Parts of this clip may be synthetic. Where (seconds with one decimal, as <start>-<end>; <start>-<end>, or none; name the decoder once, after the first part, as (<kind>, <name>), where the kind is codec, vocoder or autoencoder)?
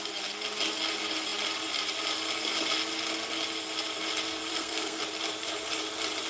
4.5-5.0 (codec, SNAC)